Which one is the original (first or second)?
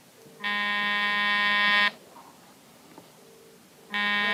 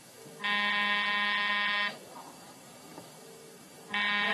first